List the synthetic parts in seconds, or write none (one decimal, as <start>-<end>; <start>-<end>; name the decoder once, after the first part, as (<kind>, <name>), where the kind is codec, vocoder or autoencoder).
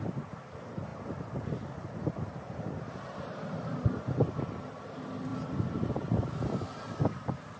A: none